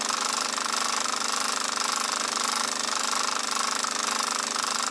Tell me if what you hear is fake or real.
real